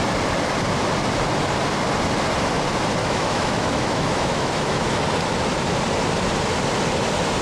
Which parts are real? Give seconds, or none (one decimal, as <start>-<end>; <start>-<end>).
0.0-3.0; 5.0-7.4

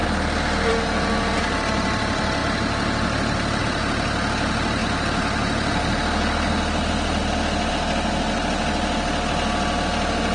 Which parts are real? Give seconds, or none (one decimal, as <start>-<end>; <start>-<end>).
0.0-10.3

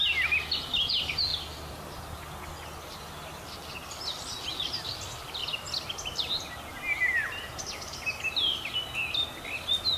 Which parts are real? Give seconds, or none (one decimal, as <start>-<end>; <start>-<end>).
0.0-10.0

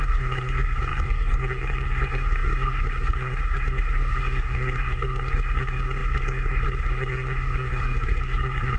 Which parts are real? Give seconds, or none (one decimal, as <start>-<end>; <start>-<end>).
none

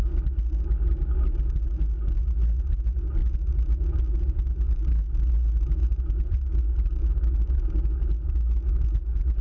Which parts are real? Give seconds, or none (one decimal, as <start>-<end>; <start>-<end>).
0.0-5.8; 6.6-9.4

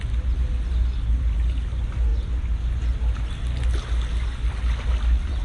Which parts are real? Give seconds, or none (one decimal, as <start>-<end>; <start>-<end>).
0.0-5.4